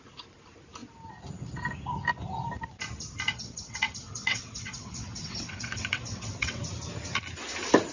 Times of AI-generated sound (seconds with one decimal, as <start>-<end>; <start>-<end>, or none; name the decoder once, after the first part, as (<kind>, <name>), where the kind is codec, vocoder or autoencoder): 3.3-6.6 (vocoder, WaveNeXt)